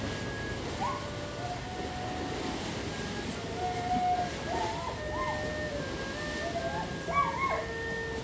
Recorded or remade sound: recorded